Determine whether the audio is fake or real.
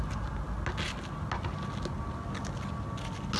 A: real